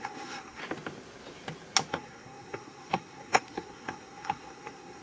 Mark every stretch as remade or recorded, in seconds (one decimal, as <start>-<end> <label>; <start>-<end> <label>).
0.0-0.6 remade; 0.6-1.9 recorded; 1.9-5.0 remade